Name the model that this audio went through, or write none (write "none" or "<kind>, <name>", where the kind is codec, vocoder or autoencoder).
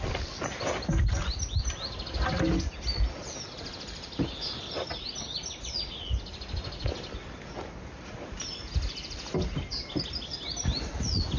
none